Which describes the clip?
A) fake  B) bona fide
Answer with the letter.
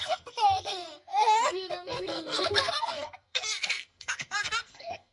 A